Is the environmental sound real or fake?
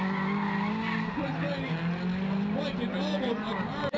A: real